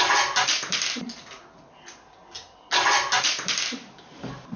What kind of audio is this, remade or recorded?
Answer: recorded